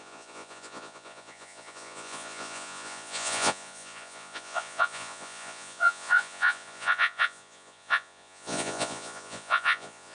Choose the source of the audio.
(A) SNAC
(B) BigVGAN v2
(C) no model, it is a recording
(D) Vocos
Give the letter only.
D